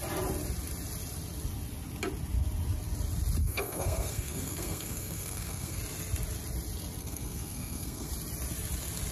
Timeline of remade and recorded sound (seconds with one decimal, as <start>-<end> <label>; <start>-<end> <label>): 0.0-3.4 recorded; 3.4-5.8 remade; 5.8-7.0 recorded; 7.0-8.1 remade; 8.1-9.1 recorded